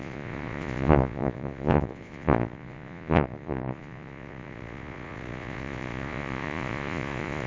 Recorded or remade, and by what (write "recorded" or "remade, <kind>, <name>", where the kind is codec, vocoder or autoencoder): remade, vocoder, Vocos